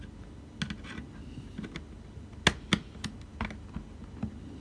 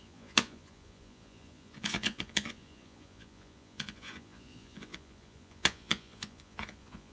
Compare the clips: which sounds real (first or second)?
first